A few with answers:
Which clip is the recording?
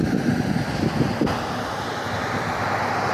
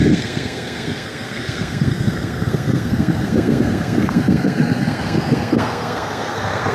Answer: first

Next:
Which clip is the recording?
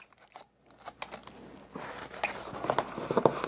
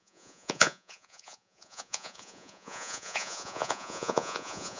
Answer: first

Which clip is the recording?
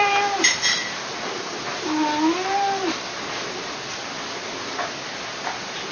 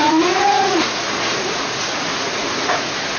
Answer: first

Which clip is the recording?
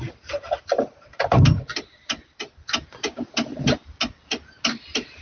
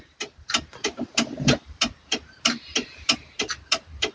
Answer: first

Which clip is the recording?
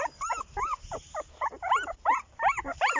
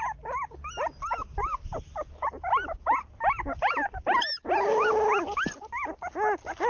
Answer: second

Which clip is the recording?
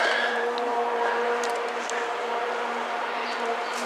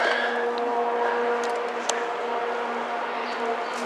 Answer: second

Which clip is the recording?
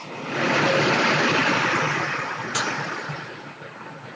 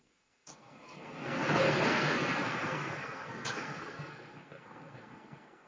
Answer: first